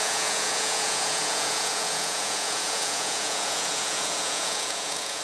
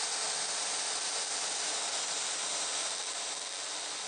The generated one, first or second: first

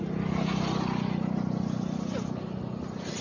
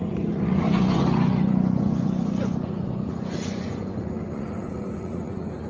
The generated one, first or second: second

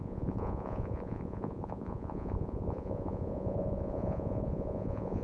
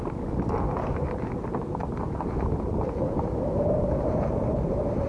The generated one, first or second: first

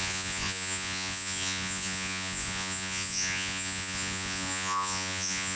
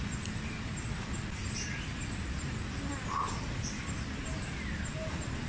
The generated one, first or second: first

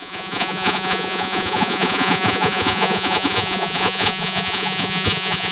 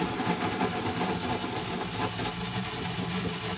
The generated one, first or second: first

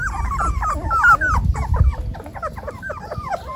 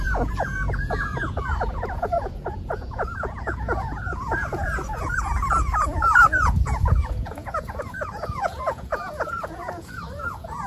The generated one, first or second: second